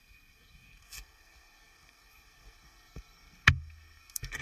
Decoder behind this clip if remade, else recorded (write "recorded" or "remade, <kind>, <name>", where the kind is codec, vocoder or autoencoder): remade, codec, SNAC